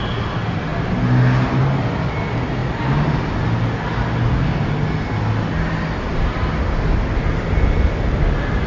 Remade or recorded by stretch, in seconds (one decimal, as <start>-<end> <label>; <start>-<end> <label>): 0.0-8.7 recorded